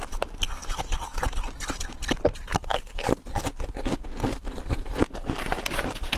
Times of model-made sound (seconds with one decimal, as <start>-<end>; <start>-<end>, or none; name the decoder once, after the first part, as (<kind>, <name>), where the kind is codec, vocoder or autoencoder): 0.0-2.7 (vocoder, BigVGAN v2); 4.5-4.9; 5.7-6.2